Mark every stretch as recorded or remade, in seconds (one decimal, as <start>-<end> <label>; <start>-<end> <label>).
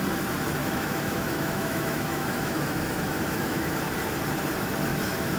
0.0-0.6 recorded; 0.6-3.8 remade; 3.8-4.9 recorded; 4.9-5.4 remade